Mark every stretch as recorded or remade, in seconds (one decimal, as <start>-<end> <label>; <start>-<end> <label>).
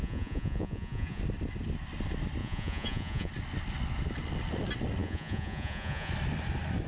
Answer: 0.0-1.2 remade; 1.2-2.4 recorded; 2.4-3.3 remade; 3.3-5.0 recorded; 5.0-6.1 remade; 6.1-6.9 recorded